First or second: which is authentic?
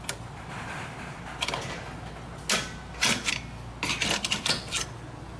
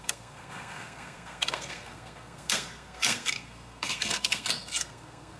first